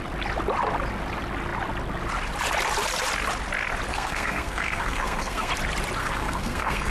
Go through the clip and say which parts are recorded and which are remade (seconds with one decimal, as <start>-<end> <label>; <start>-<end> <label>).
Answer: 0.0-3.9 recorded; 3.9-5.5 remade; 5.5-6.0 recorded; 6.0-6.9 remade